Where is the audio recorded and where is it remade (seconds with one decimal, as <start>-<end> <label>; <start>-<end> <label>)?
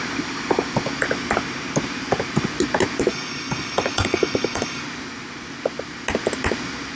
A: 0.0-3.1 recorded; 3.1-4.8 remade; 4.8-7.0 recorded